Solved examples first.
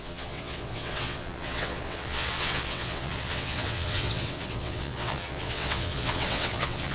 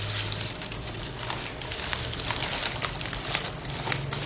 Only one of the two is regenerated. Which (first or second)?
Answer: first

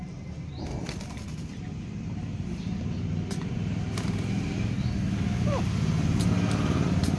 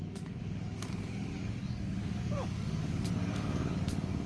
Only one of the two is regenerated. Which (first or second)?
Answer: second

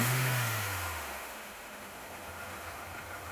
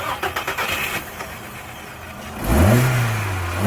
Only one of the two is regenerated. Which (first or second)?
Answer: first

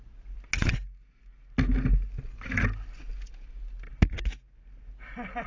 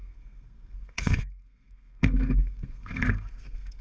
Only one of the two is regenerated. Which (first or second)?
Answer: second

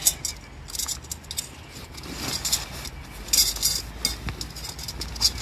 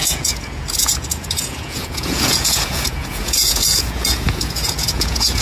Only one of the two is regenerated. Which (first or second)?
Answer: second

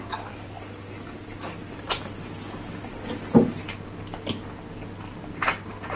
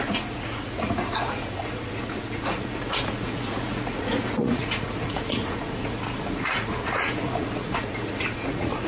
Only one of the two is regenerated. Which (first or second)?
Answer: second